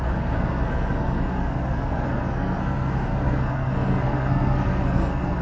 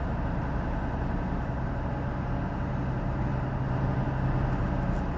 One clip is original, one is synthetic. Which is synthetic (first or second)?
first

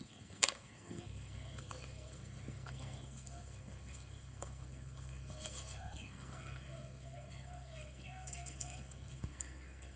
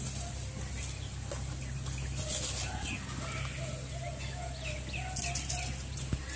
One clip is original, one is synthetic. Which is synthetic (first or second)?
first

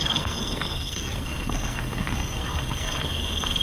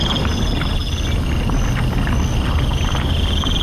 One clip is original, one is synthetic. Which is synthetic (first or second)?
first